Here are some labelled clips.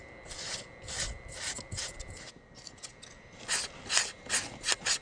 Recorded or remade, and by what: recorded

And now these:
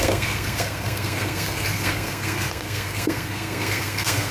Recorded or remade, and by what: remade, codec, SNAC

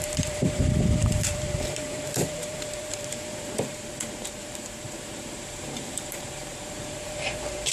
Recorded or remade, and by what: remade, vocoder, BigVGAN v2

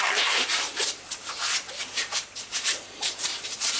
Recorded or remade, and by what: remade, vocoder, BigVGAN v2